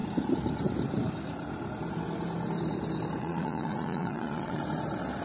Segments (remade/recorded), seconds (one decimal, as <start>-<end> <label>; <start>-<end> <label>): 0.0-3.2 recorded; 3.2-4.6 remade; 4.6-5.2 recorded